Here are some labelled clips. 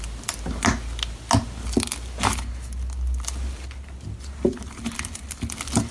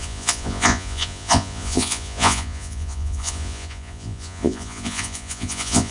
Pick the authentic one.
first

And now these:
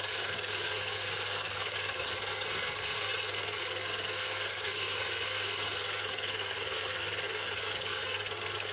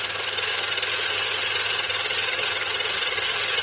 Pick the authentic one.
second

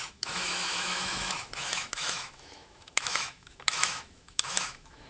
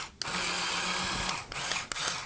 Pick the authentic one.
second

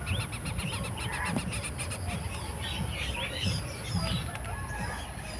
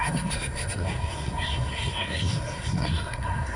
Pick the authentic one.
first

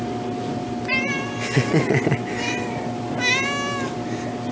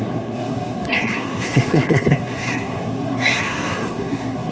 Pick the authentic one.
first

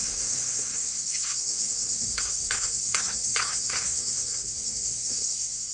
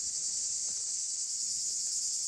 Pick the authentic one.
second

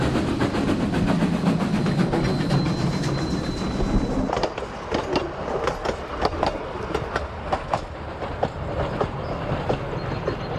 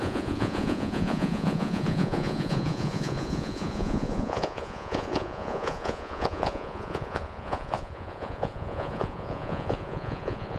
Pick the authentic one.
first